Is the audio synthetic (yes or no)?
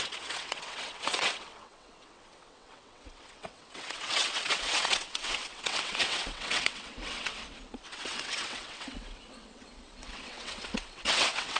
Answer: yes